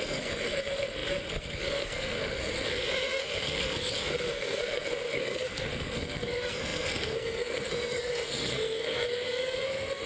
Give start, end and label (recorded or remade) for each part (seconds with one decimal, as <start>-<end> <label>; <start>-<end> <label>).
0.0-10.1 remade